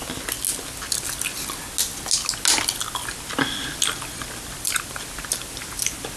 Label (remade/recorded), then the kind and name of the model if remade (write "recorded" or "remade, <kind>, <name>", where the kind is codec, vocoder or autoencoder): recorded